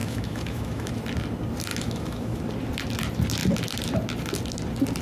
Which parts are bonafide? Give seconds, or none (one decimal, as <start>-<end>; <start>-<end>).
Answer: 0.9-1.7; 2.4-5.0